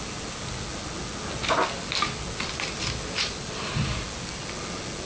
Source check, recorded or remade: recorded